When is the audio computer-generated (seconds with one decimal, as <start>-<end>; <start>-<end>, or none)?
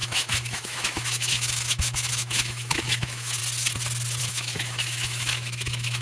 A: 0.0-3.4; 4.2-6.0